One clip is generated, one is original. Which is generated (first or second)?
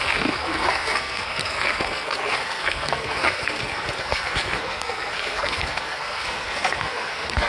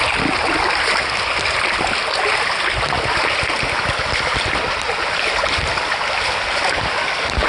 first